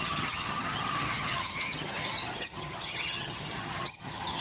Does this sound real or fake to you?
fake